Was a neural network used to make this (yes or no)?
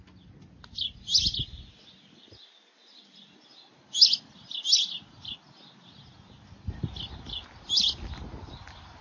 no